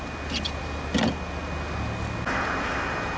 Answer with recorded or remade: recorded